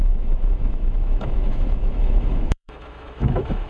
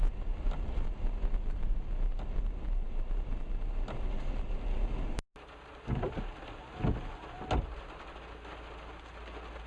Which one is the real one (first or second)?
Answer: second